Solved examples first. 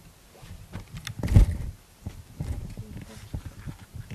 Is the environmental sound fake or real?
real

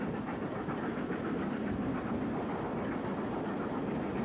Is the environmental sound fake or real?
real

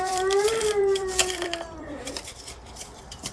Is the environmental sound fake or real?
fake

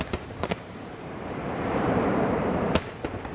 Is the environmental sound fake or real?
fake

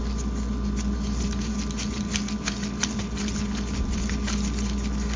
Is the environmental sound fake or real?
real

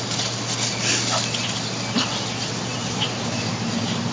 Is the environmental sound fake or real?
real